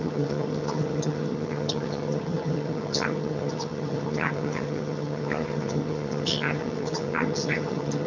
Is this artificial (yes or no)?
yes